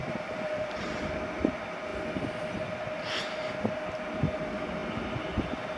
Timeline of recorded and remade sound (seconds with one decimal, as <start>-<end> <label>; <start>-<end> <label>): 0.0-0.9 remade; 0.9-5.8 recorded